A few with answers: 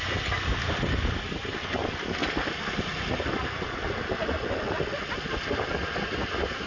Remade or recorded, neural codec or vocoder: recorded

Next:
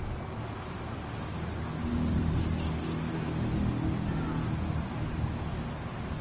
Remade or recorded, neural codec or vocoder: recorded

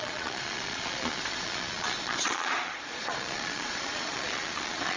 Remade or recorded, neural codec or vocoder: remade, vocoder, Vocos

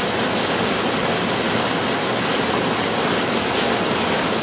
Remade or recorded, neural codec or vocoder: recorded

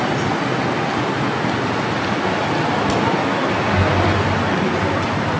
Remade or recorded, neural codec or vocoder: recorded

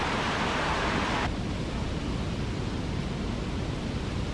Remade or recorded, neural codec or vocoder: recorded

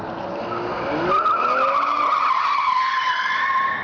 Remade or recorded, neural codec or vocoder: recorded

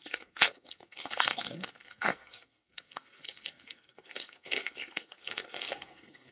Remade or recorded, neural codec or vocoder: remade, codec, SNAC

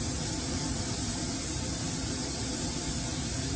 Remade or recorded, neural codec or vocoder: recorded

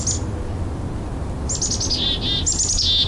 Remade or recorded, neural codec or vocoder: recorded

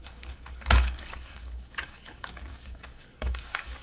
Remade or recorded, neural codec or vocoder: remade, codec, DAC